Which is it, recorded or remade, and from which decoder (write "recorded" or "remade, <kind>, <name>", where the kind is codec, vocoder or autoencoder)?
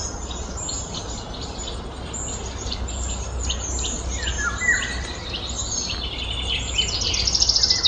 recorded